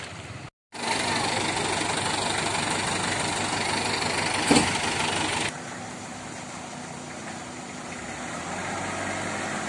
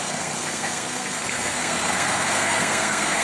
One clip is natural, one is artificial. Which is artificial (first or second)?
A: second